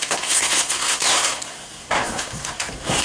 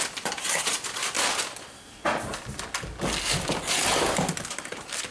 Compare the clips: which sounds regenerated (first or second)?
first